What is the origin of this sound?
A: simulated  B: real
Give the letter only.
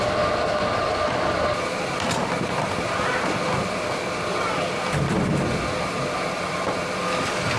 B